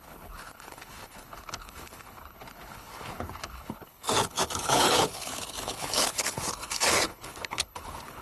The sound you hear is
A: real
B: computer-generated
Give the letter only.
B